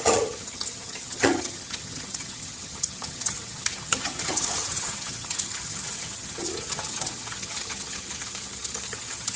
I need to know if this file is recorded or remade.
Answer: remade